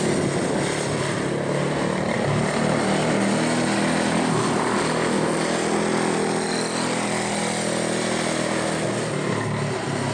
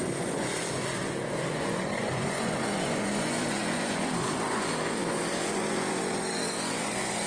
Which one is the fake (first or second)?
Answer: second